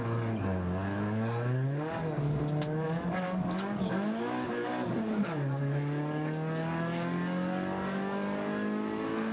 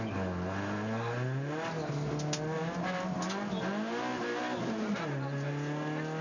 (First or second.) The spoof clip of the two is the first